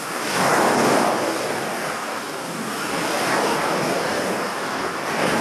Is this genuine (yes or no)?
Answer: no